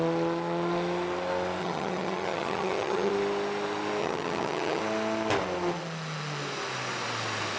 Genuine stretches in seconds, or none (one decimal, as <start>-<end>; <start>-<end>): 0.0-1.6; 3.1-4.0; 4.8-7.6